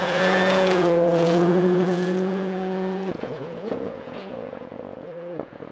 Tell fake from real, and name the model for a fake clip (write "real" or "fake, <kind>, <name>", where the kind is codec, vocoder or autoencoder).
fake, vocoder, Vocos